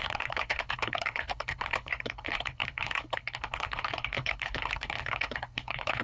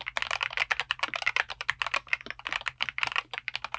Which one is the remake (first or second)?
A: first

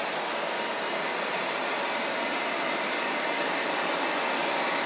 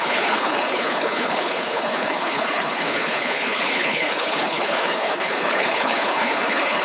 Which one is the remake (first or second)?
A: second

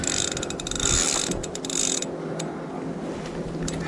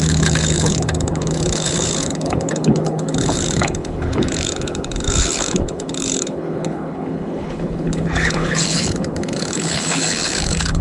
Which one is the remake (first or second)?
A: second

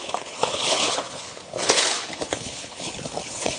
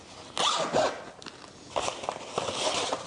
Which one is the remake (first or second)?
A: first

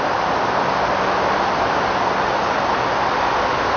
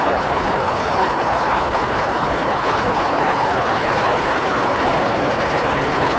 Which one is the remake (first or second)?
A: second